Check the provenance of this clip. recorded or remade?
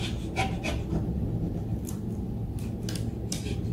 recorded